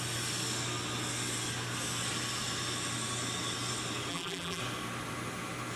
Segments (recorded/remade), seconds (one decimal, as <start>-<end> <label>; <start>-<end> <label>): 0.0-4.1 recorded; 4.1-4.6 remade; 4.6-5.8 recorded

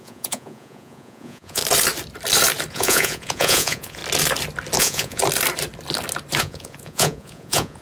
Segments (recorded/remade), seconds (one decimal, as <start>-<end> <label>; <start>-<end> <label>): 0.0-1.6 remade; 1.6-2.7 recorded; 2.7-4.0 remade; 4.0-4.8 recorded; 4.8-5.2 remade; 5.2-6.4 recorded; 6.4-7.8 remade